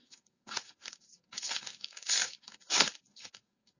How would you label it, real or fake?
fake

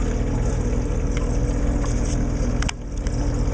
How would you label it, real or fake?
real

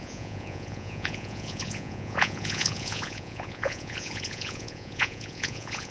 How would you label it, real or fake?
fake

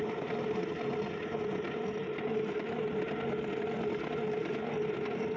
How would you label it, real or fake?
real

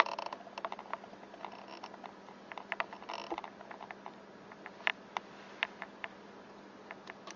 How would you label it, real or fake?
real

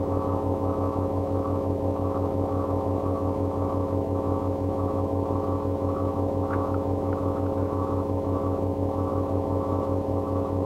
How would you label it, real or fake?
fake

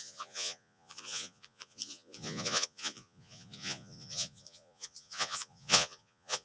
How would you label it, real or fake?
fake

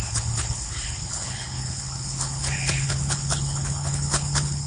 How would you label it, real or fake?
fake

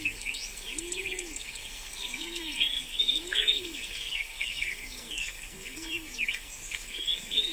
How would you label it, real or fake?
fake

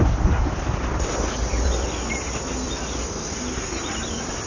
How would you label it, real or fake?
real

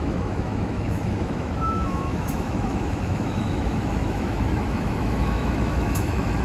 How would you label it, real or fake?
fake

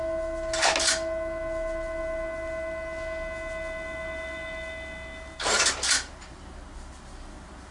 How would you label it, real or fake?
real